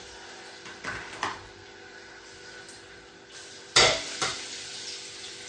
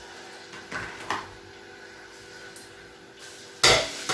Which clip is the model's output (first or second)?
first